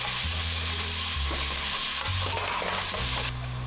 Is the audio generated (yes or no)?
no